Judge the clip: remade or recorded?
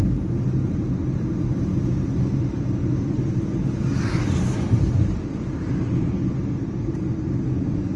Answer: recorded